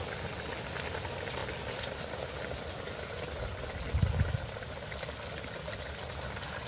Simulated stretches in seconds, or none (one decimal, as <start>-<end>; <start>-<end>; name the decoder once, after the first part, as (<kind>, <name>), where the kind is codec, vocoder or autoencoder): none